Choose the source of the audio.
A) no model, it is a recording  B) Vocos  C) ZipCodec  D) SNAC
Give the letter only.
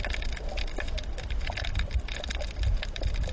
A